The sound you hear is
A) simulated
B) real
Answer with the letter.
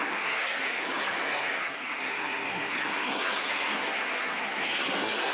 A